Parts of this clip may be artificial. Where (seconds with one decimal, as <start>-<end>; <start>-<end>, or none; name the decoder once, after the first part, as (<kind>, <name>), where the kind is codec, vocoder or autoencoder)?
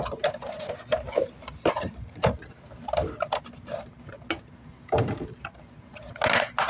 none